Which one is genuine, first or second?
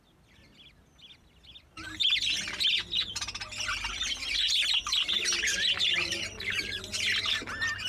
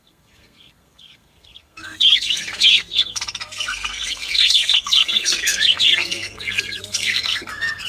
first